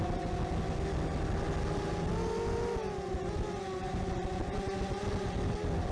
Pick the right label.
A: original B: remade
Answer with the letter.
A